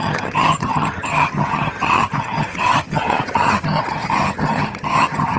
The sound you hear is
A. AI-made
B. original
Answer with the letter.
A